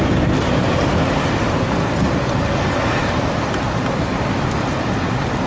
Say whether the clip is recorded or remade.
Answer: recorded